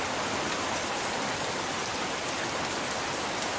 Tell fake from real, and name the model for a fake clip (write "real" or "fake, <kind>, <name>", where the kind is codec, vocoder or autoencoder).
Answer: real